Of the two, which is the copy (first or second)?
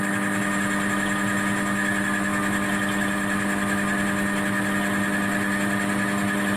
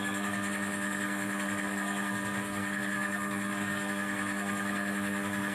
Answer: second